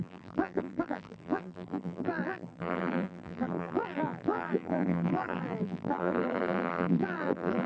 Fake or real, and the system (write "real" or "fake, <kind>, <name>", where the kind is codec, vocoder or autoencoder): fake, vocoder, BigVGAN v2